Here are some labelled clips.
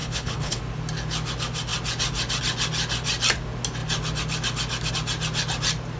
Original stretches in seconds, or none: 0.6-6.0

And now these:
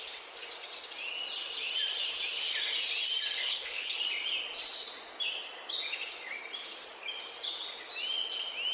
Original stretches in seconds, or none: 0.0-3.4; 4.0-8.7

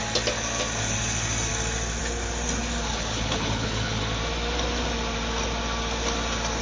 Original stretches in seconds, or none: 0.0-2.9; 4.0-6.6

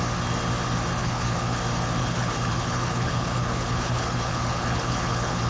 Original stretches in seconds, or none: 0.0-1.0; 1.6-2.0

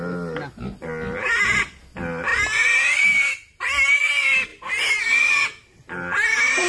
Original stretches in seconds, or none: 0.0-6.7